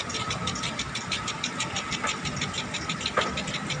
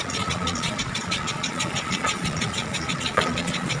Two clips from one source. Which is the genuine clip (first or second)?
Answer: first